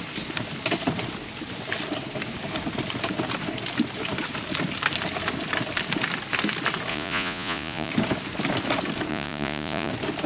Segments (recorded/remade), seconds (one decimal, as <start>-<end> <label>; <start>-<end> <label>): 0.0-6.9 recorded; 6.9-7.9 remade; 7.9-9.1 recorded; 9.1-9.9 remade; 9.9-10.3 recorded